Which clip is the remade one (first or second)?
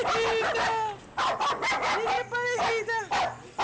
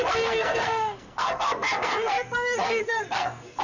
second